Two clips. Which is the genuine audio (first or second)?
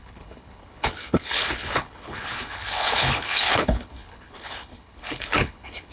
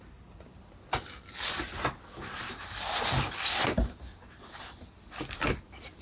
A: second